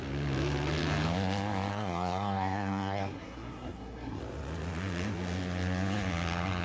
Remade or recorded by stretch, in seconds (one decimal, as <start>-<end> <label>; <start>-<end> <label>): 0.0-1.7 recorded; 1.7-4.2 remade; 4.2-6.6 recorded